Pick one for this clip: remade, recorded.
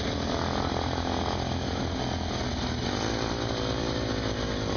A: recorded